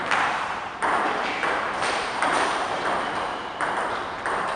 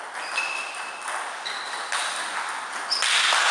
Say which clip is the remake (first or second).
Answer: first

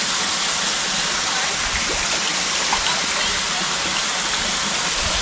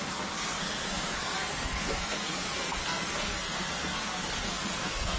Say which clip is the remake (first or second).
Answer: second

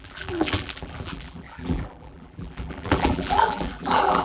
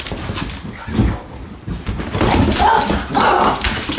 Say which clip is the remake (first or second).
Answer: first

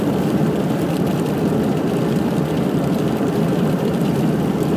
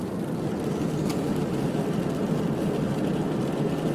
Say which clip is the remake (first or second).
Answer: first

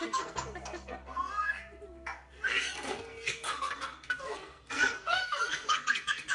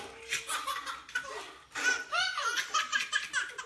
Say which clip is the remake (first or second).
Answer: first